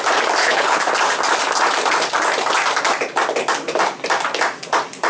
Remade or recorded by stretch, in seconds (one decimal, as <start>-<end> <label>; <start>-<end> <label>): 0.0-0.4 recorded; 0.4-0.9 remade; 0.9-5.1 recorded